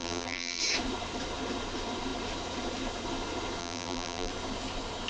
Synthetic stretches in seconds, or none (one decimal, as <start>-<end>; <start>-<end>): 0.0-0.6; 3.6-4.3